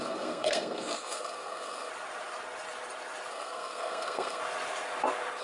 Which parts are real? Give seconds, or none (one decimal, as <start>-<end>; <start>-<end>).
1.9-3.3; 4.4-5.4